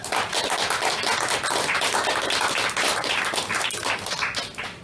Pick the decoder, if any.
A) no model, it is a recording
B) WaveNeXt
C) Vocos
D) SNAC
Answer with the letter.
A